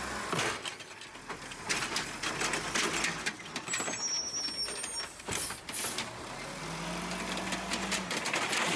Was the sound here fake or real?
real